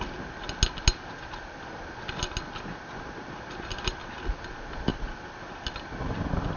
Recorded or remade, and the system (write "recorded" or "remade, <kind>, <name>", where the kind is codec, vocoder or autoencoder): recorded